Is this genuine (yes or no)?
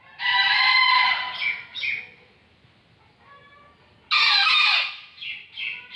yes